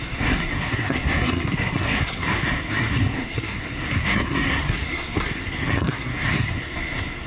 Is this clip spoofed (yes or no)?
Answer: yes